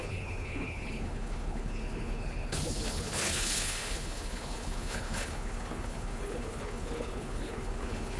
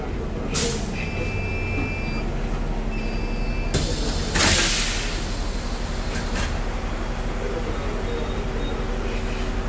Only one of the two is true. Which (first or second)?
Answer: second